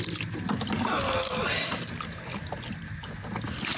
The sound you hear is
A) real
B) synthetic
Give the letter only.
A